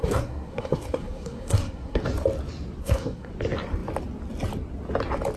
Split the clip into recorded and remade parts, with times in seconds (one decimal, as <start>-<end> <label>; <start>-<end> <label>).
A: 0.0-2.0 remade; 2.0-2.8 recorded; 2.8-3.3 remade; 3.3-5.4 recorded